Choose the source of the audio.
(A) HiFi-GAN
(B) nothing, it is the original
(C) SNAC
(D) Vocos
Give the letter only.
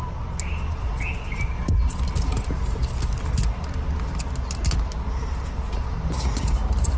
B